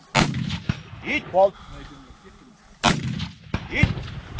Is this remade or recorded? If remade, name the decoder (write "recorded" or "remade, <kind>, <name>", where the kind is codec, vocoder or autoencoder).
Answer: recorded